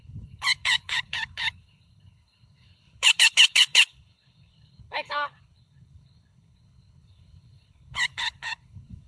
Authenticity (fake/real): fake